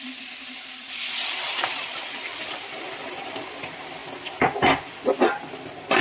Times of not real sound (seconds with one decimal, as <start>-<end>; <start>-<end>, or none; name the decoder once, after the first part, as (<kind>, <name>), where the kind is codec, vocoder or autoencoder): none